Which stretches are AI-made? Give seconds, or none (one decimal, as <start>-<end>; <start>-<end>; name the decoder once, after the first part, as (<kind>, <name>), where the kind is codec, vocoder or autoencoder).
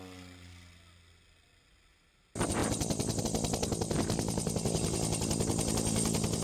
none